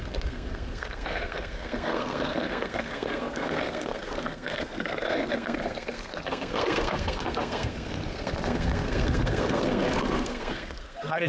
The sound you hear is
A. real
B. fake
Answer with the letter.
B